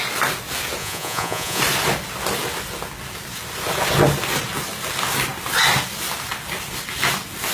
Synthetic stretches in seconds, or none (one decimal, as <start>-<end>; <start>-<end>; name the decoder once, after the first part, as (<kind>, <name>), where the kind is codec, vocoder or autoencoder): 0.8-1.6 (vocoder, Vocos)